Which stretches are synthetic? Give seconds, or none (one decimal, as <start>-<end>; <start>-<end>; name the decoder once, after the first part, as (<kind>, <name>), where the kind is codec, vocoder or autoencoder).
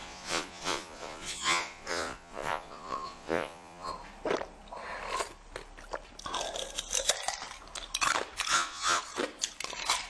0.0-3.9 (vocoder, Vocos); 8.5-9.0